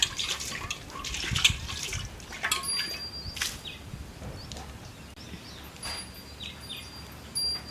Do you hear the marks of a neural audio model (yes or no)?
no